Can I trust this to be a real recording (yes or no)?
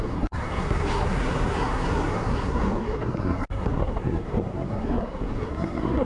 no